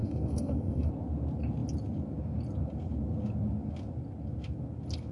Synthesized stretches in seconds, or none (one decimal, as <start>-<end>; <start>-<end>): 0.0-0.9